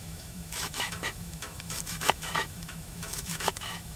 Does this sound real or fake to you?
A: fake